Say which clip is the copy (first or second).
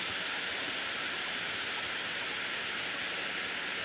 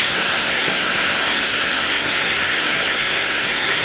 second